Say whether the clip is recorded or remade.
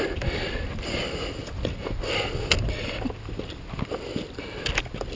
recorded